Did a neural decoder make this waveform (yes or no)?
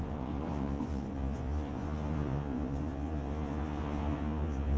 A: yes